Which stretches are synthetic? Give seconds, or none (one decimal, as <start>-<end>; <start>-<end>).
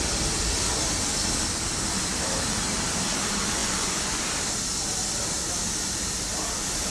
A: 3.6-4.2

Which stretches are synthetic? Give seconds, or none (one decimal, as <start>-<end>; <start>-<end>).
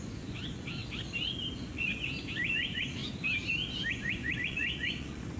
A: 0.0-0.8; 1.5-1.9; 2.5-3.0; 3.9-5.4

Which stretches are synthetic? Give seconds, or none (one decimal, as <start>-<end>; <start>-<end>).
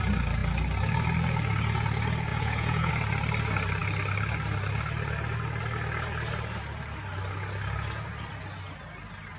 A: 2.3-2.9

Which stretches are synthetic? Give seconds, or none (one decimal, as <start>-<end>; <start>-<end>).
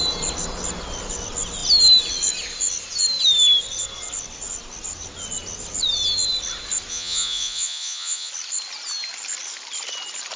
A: 6.9-8.3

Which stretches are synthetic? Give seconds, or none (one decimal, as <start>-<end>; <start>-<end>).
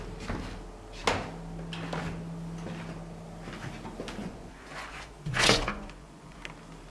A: 4.2-6.4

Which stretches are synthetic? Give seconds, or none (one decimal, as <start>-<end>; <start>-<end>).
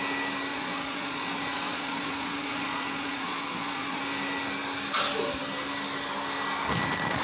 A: 0.5-4.0